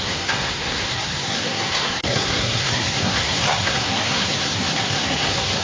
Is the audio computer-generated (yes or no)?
yes